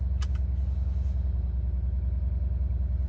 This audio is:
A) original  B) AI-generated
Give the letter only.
A